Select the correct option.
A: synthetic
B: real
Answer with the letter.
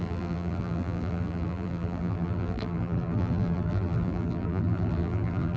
A